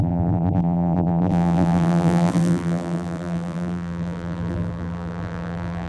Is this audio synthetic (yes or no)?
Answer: yes